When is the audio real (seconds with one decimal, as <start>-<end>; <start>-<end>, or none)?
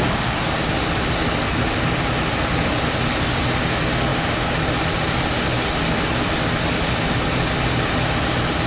0.0-8.7